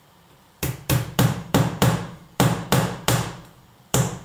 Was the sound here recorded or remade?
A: remade